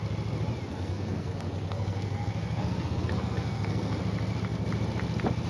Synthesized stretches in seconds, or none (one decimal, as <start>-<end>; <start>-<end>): 0.7-4.0